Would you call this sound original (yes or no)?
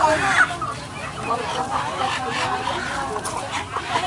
yes